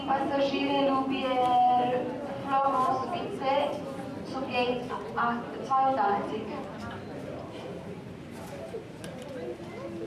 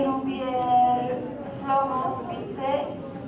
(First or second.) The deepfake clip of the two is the first